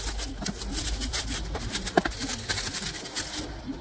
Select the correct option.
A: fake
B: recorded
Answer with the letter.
B